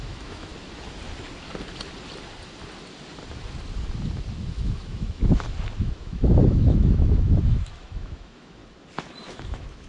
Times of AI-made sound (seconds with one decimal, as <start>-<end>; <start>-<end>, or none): 0.0-0.5; 4.5-5.2; 5.8-8.6; 9.3-9.9